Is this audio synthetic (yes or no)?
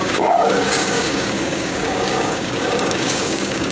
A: yes